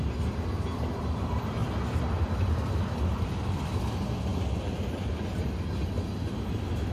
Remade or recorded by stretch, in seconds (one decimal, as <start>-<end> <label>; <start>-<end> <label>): 0.0-6.9 recorded

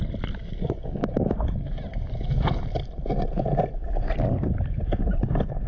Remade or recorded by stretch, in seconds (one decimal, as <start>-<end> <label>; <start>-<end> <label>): 0.0-0.4 recorded; 0.4-1.4 remade; 1.4-5.7 recorded

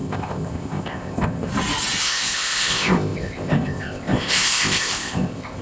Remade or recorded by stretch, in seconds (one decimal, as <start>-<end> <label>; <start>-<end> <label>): 0.0-1.5 remade; 1.5-2.0 recorded; 2.0-5.6 remade

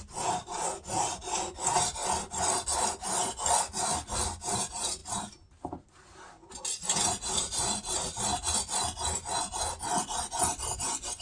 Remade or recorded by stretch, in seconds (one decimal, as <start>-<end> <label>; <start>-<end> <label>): 0.0-11.2 recorded